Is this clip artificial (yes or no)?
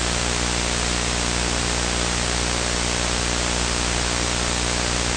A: no